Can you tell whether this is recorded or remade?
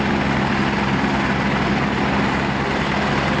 recorded